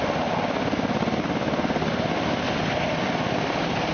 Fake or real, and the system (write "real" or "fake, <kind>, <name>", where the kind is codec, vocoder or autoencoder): real